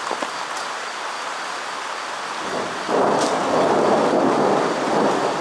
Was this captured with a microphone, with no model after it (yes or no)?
yes